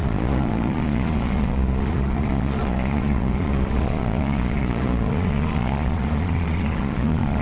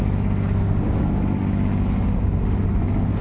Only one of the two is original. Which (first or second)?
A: second